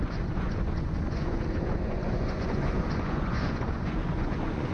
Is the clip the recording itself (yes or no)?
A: no